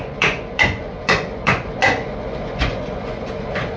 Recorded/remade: remade